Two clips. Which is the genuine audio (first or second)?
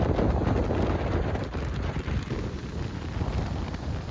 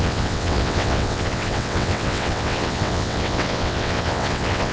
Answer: first